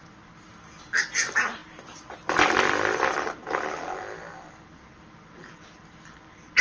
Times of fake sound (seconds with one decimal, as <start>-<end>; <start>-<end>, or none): none